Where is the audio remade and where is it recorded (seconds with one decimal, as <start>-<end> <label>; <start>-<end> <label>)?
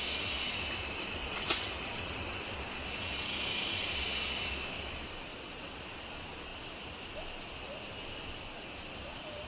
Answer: 0.0-1.2 recorded; 1.2-2.5 remade; 2.5-5.3 recorded; 5.3-5.8 remade; 5.8-9.5 recorded